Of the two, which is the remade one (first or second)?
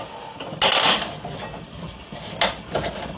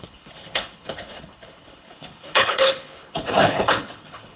second